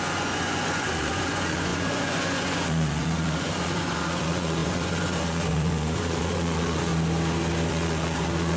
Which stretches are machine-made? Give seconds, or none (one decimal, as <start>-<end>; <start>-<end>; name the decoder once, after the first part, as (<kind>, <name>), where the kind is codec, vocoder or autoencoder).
0.0-6.9 (vocoder, Vocos); 7.7-8.6